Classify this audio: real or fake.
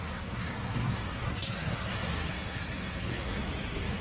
fake